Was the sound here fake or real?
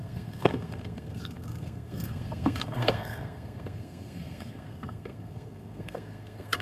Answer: fake